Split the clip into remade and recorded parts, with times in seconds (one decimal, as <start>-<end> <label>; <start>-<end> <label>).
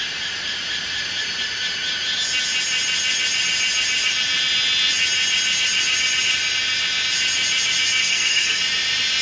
0.0-8.0 recorded; 8.0-8.6 remade; 8.6-9.2 recorded